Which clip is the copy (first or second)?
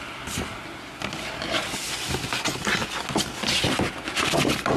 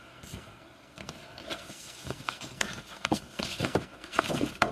second